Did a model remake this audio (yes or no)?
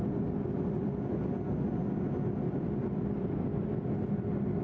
no